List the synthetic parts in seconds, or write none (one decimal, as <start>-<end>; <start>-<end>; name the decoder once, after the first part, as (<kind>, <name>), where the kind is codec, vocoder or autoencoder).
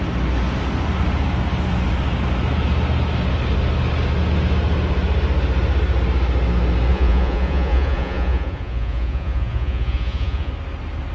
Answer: 6.9-10.5 (vocoder, Vocos)